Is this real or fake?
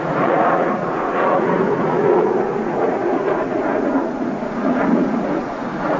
fake